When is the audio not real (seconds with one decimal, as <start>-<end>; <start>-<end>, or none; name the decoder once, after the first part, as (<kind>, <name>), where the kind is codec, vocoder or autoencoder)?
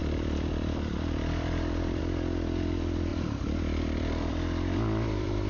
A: 0.0-2.0 (vocoder, BigVGAN v2); 3.1-5.5